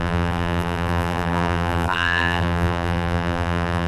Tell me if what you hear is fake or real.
fake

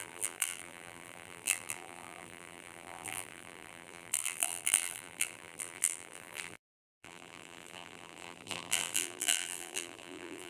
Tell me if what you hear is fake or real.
fake